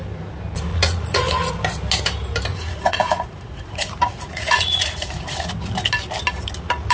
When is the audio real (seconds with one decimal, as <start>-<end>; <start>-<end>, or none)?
0.0-0.7; 1.5-2.5; 5.5-6.9